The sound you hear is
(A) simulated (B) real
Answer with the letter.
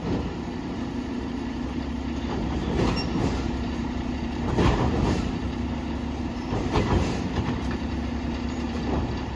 A